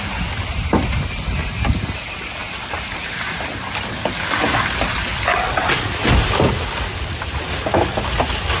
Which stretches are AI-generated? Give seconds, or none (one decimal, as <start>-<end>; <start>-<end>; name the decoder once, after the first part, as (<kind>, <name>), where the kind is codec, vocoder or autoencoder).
none